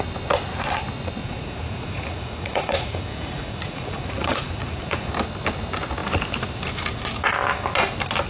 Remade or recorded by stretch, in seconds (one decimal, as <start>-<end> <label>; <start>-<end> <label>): 0.0-1.2 recorded; 1.2-5.1 remade; 5.1-8.3 recorded

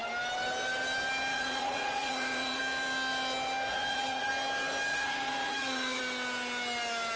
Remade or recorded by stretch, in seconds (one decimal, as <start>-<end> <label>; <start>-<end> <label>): 0.0-1.3 recorded; 1.3-2.6 remade; 2.6-3.7 recorded; 3.7-4.3 remade; 4.3-4.9 recorded; 4.9-6.0 remade; 6.0-7.2 recorded

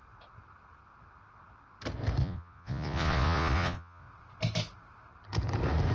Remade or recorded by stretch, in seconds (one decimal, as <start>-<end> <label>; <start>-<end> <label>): 0.0-2.2 recorded; 2.2-4.1 remade; 4.1-5.9 recorded

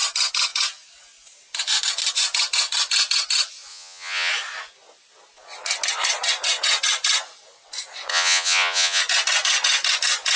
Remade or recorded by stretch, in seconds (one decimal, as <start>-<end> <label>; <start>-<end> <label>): 0.0-3.7 recorded; 3.7-4.3 remade; 4.3-8.1 recorded; 8.1-9.0 remade; 9.0-10.4 recorded

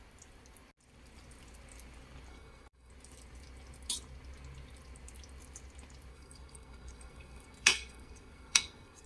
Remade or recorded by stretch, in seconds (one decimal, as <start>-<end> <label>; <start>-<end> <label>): 0.0-2.3 recorded; 2.3-2.9 remade; 2.9-6.1 recorded; 6.1-9.1 remade

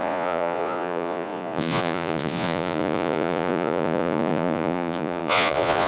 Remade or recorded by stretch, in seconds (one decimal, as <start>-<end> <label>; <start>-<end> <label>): 0.0-5.9 remade

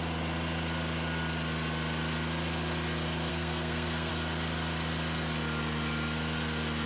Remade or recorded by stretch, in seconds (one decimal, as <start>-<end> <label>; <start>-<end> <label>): 0.0-3.3 recorded; 3.3-4.1 remade; 4.1-6.9 recorded